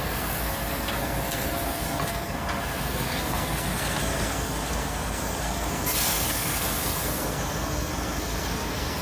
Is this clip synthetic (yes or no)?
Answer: yes